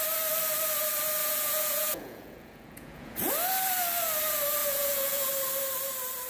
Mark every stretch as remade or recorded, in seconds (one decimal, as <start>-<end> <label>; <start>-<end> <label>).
0.0-1.2 recorded; 1.2-3.3 remade; 3.3-4.6 recorded; 4.6-5.3 remade; 5.3-6.3 recorded